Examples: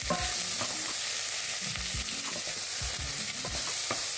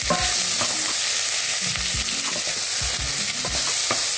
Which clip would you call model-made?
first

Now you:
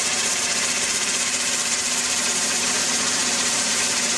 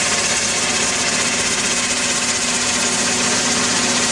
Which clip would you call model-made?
first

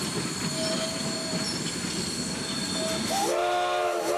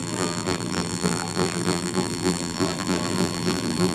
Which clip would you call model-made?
second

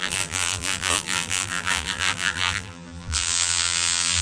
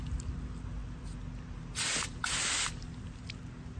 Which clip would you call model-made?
first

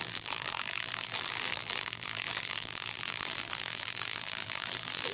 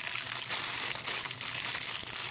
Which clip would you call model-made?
first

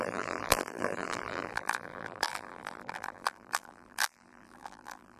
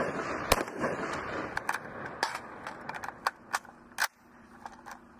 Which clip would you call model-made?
first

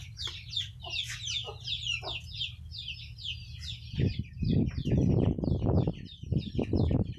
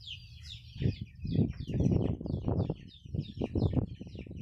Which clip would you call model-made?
second